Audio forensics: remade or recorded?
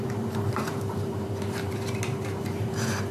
remade